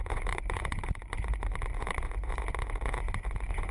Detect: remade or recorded remade